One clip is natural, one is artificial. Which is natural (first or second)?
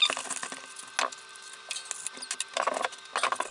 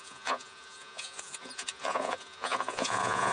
first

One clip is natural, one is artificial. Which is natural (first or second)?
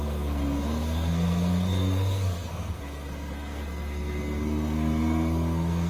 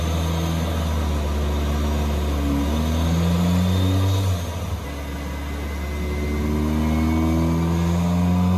second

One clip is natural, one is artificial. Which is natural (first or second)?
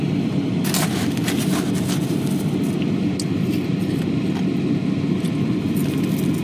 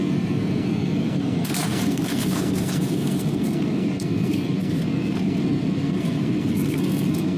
first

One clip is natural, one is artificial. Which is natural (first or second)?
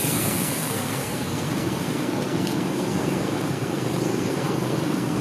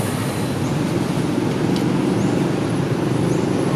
second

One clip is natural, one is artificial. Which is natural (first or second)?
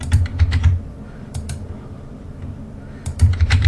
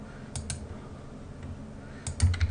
second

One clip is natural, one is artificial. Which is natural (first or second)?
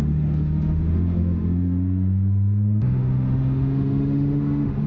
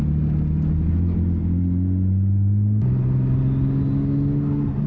second